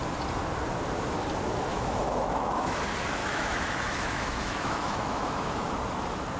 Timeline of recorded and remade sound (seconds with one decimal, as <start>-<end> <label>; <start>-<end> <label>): 0.0-1.7 recorded; 1.7-2.8 remade; 2.8-3.2 recorded; 3.2-5.7 remade; 5.7-6.4 recorded